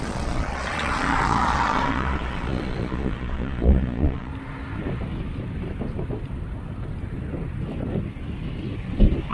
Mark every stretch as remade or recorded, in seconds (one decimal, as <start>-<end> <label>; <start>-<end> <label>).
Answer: 0.0-4.3 remade; 4.3-9.3 recorded